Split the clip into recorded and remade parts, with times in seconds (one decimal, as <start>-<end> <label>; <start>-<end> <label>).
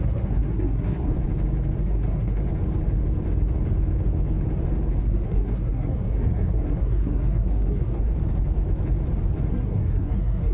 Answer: 0.0-1.1 remade; 1.1-1.8 recorded; 1.8-2.4 remade; 2.4-5.0 recorded; 5.0-8.1 remade; 8.1-9.5 recorded; 9.5-10.5 remade